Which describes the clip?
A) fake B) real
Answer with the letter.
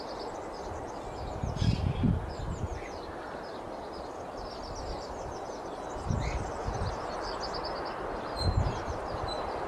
B